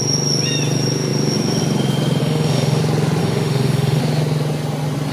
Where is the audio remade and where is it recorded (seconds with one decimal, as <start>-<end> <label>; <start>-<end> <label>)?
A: 0.0-2.2 recorded; 2.2-2.8 remade; 2.8-3.2 recorded; 3.2-4.0 remade; 4.0-5.1 recorded